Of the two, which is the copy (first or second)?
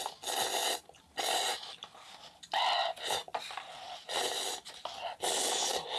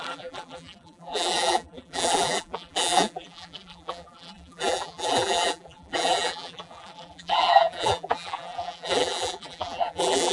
second